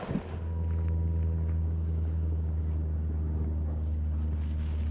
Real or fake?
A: real